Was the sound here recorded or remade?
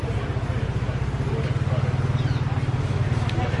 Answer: recorded